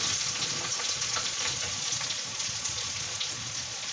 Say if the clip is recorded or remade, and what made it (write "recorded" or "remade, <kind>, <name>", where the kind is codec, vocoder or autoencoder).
remade, vocoder, Vocos